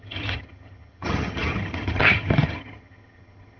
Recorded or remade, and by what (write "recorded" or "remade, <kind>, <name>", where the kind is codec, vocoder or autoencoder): remade, vocoder, HiFi-GAN